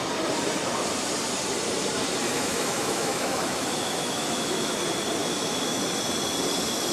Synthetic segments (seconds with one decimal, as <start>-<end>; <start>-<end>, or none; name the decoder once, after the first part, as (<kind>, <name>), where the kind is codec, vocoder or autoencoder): 2.3-4.8 (autoencoder, DAC-VAE); 5.2-5.8